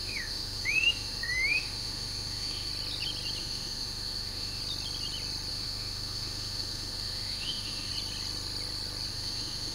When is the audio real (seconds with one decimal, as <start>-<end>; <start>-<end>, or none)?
2.7-3.4; 4.6-5.5; 7.9-9.1